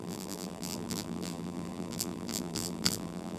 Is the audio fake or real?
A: fake